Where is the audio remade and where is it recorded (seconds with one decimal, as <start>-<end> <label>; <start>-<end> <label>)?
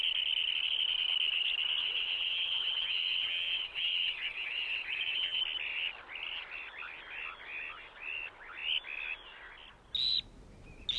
0.0-1.8 recorded; 1.8-5.4 remade; 5.4-11.0 recorded